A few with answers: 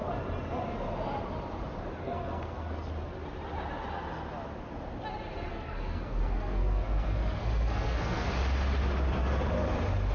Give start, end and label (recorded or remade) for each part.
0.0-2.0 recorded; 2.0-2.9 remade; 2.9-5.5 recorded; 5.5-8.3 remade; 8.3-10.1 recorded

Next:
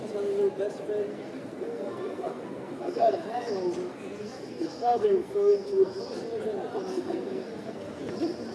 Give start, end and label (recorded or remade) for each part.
0.0-1.1 recorded; 1.1-3.5 remade; 3.5-3.9 recorded; 3.9-6.0 remade; 6.0-6.9 recorded; 6.9-8.0 remade; 8.0-8.5 recorded

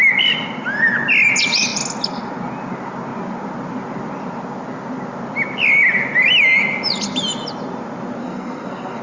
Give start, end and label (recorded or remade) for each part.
0.0-8.2 recorded; 8.2-9.0 remade